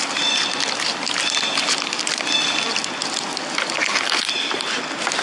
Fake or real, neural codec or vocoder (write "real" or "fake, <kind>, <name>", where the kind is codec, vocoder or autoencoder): real